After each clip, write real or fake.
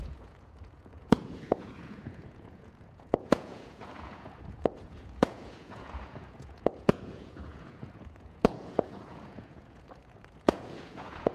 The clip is fake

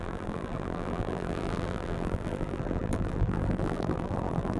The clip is fake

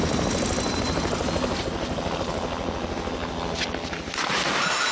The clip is real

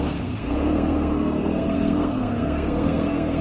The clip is fake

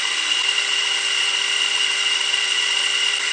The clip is fake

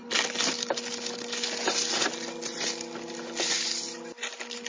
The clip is real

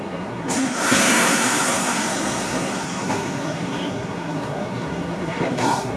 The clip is fake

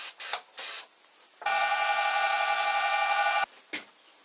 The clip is real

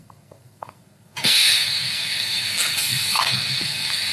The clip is fake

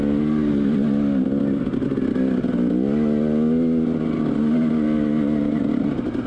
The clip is real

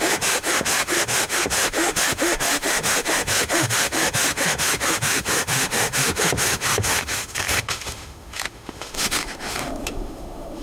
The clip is fake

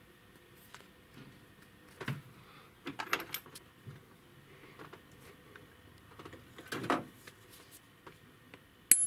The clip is real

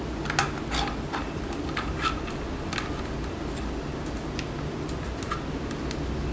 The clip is real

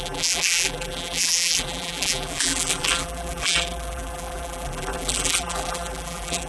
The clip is fake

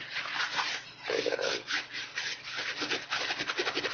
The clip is real